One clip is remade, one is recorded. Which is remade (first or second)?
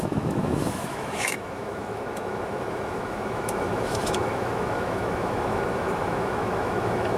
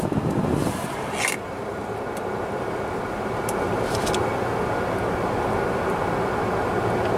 first